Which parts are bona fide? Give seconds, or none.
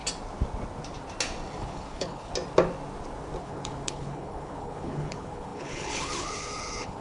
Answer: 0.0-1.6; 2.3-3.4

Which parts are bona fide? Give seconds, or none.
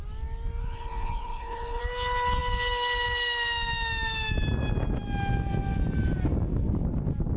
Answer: 0.0-0.6; 1.8-7.4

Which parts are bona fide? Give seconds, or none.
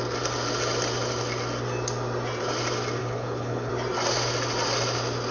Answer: 0.0-3.0; 3.7-5.3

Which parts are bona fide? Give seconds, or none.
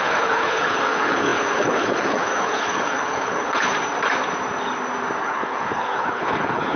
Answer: 3.7-5.2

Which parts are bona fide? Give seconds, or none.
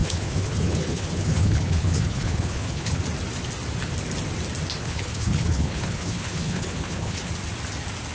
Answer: 3.0-4.8; 7.3-8.1